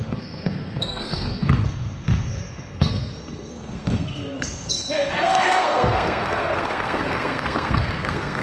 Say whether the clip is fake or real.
fake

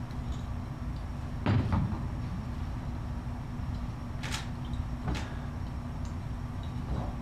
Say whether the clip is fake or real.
real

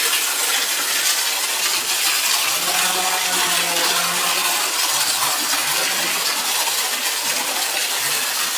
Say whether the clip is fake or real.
real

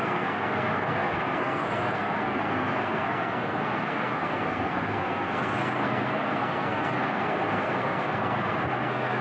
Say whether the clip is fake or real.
fake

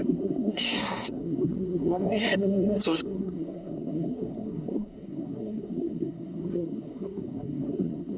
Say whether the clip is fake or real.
fake